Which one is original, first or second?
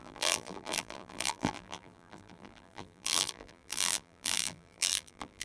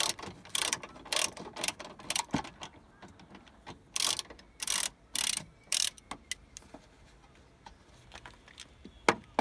second